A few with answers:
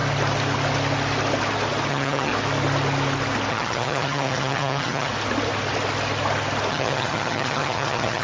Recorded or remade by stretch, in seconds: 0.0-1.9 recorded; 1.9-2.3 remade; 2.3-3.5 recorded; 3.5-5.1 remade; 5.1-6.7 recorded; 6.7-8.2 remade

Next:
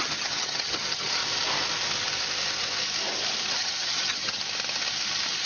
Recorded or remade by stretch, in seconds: 0.0-1.2 remade; 1.2-3.5 recorded; 3.5-4.4 remade; 4.4-5.5 recorded

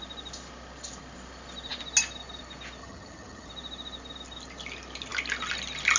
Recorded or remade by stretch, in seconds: 0.0-2.8 recorded; 2.8-3.5 remade; 3.5-6.0 recorded

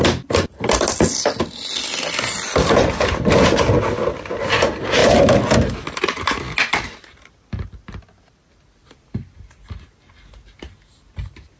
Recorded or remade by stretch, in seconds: 0.0-11.6 recorded